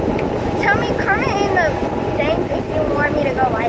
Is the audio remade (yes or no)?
no